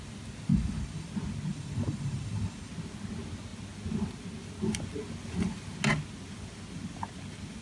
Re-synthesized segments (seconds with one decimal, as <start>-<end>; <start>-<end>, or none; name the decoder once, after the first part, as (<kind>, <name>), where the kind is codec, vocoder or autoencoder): 0.5-1.1 (vocoder, BigVGAN v2); 1.5-2.7